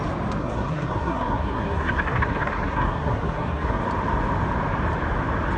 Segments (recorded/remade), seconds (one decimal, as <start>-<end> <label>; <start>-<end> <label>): 0.0-0.4 recorded; 0.4-3.8 remade; 3.8-5.6 recorded